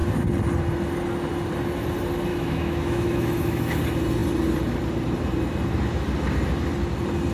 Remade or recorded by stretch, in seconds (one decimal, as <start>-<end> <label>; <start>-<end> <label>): 0.0-2.3 recorded; 2.3-3.8 remade; 3.8-7.3 recorded